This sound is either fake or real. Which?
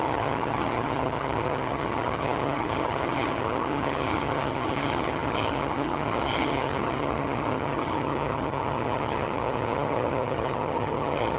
fake